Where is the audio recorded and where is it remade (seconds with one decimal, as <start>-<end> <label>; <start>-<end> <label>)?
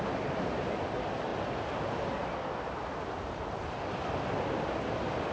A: 0.0-5.3 recorded